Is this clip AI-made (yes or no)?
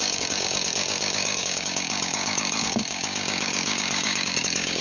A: yes